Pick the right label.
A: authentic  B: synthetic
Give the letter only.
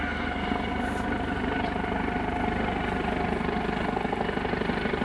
A